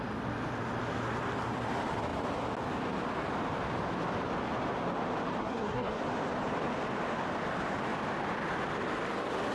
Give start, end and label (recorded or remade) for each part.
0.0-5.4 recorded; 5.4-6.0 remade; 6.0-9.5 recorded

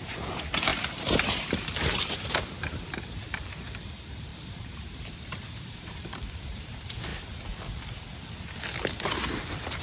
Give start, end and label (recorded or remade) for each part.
0.0-7.1 remade; 7.1-9.8 recorded

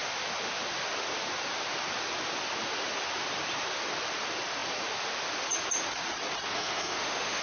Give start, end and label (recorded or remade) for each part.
0.0-6.5 recorded; 6.5-7.4 remade

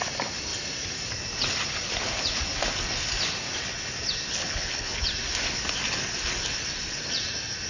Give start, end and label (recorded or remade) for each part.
0.0-4.3 recorded; 4.3-5.0 remade; 5.0-7.7 recorded

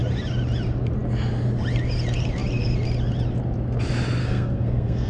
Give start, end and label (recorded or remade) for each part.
0.0-4.2 recorded; 4.2-5.1 remade

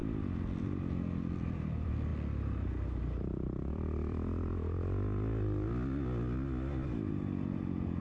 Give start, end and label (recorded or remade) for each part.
0.0-0.6 recorded; 0.6-2.1 remade; 2.1-3.7 recorded; 3.7-4.5 remade; 4.5-7.1 recorded; 7.1-8.0 remade

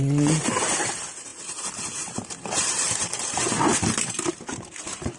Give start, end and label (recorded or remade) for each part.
0.0-5.2 remade

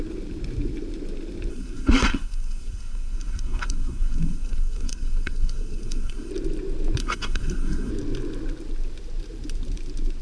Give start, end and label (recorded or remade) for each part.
0.0-1.5 recorded; 1.5-6.3 remade; 6.3-7.0 recorded; 7.0-7.9 remade; 7.9-10.2 recorded